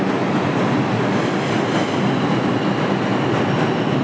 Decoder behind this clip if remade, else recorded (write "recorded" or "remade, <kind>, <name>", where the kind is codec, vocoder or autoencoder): recorded